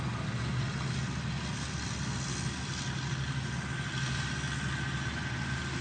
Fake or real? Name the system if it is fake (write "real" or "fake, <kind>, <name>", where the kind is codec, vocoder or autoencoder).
real